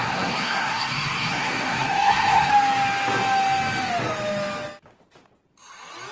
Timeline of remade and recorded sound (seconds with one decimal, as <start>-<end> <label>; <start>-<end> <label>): 0.0-2.5 remade; 2.5-6.1 recorded